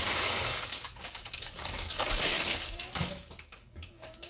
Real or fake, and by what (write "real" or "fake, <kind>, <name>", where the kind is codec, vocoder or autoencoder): fake, codec, DAC